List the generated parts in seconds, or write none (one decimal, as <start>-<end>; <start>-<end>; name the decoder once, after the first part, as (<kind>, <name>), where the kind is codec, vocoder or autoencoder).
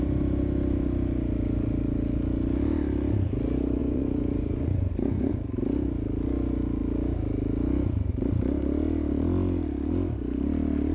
3.8-5.3 (vocoder, Vocos)